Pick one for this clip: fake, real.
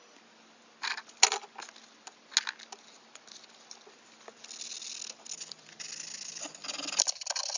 real